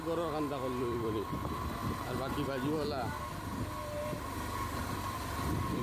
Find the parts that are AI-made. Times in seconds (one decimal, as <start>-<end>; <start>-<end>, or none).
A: none